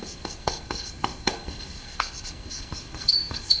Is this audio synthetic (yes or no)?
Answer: yes